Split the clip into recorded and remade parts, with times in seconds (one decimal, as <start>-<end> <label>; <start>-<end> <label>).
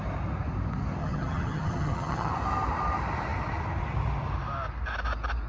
0.0-1.0 recorded; 1.0-2.3 remade; 2.3-5.5 recorded